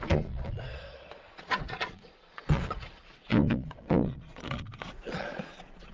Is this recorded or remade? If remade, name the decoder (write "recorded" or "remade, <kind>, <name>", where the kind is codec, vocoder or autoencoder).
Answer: remade, vocoder, Vocos